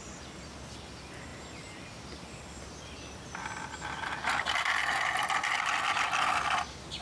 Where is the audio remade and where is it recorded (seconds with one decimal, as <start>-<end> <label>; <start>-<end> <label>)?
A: 0.0-7.0 recorded